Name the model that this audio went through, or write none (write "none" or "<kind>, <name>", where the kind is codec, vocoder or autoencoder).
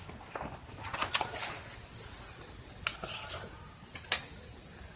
none